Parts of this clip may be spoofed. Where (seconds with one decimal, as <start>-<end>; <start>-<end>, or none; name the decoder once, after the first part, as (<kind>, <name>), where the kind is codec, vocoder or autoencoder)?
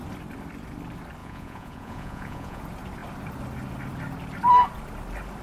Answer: 1.2-2.6 (vocoder, Vocos)